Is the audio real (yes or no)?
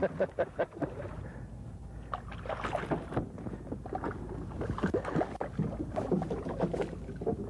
yes